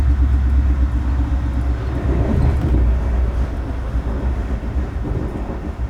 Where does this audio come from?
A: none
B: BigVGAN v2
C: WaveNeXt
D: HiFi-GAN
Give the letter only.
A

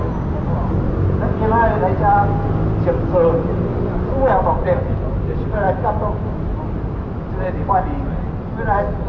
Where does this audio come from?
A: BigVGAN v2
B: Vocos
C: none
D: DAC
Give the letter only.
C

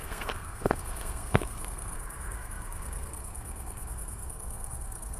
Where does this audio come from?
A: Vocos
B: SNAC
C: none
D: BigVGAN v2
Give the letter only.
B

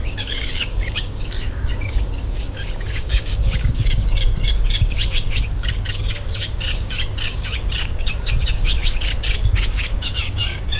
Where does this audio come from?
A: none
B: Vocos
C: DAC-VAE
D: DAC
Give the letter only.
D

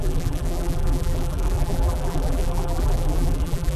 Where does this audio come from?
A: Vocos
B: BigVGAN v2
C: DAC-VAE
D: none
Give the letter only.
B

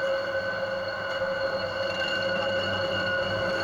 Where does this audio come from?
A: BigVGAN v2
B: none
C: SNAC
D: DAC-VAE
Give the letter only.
B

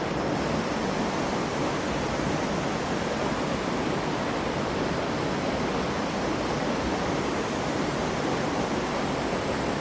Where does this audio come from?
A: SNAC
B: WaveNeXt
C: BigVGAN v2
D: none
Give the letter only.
D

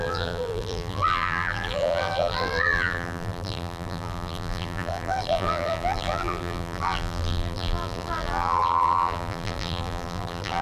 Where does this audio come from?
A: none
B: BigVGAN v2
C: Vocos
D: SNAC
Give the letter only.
B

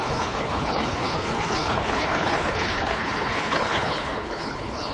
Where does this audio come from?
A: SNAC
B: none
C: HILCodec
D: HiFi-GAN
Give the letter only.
C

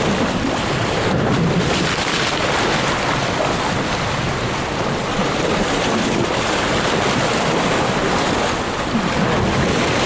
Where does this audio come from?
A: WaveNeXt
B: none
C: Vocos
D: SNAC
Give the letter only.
B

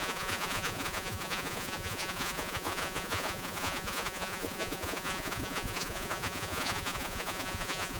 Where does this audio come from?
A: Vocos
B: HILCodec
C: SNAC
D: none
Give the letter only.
A